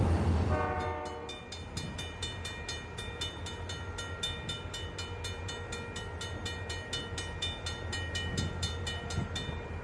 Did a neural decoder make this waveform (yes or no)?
no